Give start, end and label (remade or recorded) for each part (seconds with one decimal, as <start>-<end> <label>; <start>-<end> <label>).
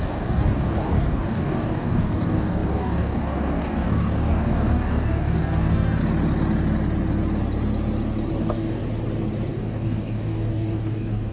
0.0-6.0 remade; 6.0-8.4 recorded; 8.4-8.8 remade; 8.8-9.5 recorded; 9.5-11.3 remade